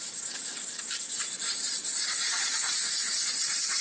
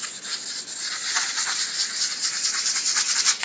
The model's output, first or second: first